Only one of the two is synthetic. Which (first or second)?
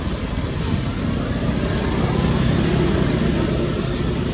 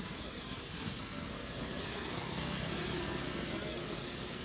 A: second